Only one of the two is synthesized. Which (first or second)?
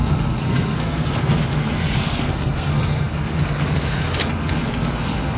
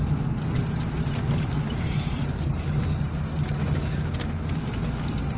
first